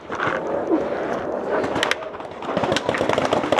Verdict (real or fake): real